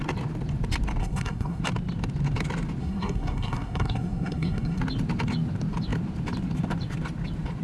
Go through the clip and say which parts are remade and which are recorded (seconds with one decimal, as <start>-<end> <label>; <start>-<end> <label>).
0.0-1.0 recorded; 1.0-1.6 remade; 1.6-2.8 recorded; 2.8-4.8 remade; 4.8-7.6 recorded